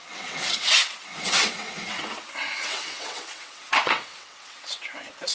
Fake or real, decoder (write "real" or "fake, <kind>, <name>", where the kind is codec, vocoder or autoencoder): fake, vocoder, WaveNeXt